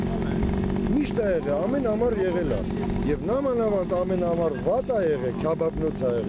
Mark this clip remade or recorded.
recorded